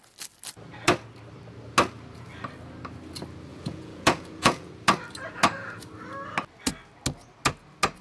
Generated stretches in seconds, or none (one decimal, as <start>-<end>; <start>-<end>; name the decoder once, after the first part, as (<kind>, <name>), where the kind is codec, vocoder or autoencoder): 3.5-4.7 (vocoder, Vocos)